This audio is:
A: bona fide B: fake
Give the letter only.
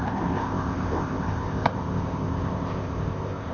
B